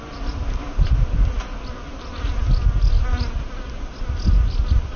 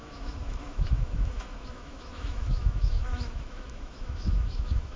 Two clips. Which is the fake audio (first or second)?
second